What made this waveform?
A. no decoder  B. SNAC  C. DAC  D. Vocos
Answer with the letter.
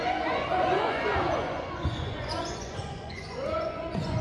D